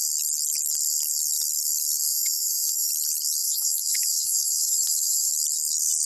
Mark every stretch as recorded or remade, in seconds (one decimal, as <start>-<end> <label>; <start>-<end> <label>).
0.0-2.1 recorded; 2.1-2.9 remade; 2.9-3.4 recorded; 3.4-5.3 remade; 5.3-6.1 recorded